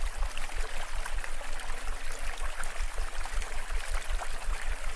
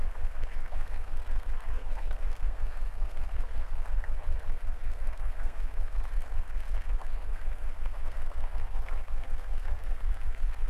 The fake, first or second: second